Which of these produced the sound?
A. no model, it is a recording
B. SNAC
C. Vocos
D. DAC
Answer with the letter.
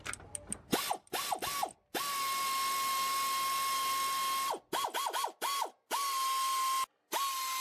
A